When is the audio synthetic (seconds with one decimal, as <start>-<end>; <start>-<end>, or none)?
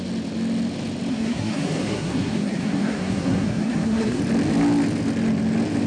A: 1.1-4.2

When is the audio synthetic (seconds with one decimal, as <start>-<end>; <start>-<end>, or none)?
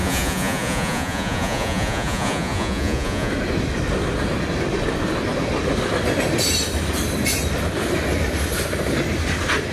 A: 0.0-3.3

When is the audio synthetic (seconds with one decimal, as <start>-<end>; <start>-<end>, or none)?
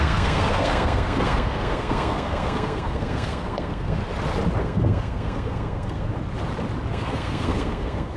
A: 0.0-4.0; 4.6-6.1; 6.9-8.2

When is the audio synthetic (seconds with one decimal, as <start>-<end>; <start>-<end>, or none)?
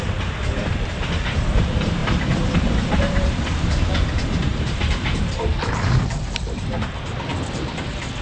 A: 2.0-3.3; 4.5-5.5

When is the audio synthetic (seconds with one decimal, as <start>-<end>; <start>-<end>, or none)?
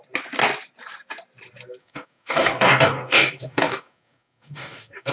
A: 1.8-5.1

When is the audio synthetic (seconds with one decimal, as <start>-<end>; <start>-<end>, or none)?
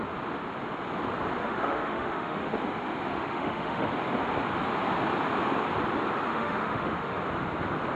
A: 1.4-2.6; 3.1-3.9; 6.3-7.2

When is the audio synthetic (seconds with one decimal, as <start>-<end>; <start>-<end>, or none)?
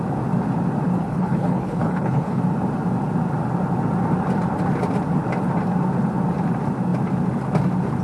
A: 1.0-2.4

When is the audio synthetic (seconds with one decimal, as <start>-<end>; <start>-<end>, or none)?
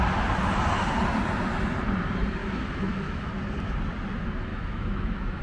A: 2.4-3.3; 4.5-5.4